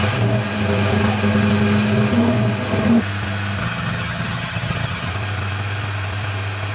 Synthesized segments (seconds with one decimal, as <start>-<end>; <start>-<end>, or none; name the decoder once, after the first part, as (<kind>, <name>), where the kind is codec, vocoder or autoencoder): 3.6-5.1 (vocoder, HiFi-GAN)